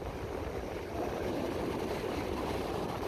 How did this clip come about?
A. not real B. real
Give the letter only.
A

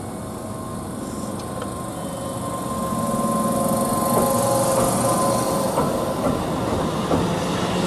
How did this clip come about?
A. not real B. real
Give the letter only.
B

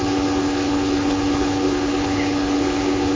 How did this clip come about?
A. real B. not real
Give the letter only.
B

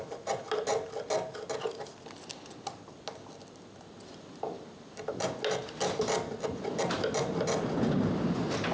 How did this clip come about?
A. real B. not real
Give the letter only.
A